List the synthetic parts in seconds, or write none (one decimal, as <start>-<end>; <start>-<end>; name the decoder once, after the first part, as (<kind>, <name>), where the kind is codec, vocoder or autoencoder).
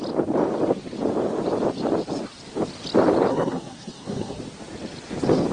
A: 3.3-4.4 (codec, SNAC)